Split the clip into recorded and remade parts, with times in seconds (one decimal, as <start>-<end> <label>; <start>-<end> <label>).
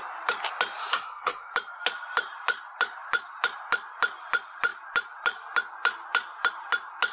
0.0-0.9 recorded; 0.9-1.5 remade; 1.5-7.1 recorded